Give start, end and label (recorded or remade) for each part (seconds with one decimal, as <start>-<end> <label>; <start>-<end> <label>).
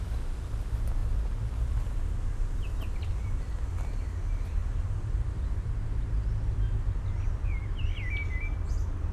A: 0.0-9.1 recorded